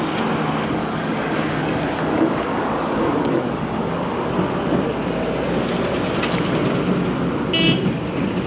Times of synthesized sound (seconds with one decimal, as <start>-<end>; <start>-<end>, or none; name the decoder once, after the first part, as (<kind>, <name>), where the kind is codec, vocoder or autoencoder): 0.8-4.3 (codec, DAC)